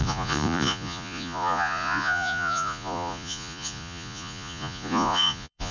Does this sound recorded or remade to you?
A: remade